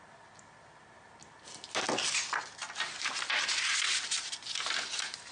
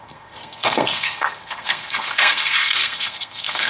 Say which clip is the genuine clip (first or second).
first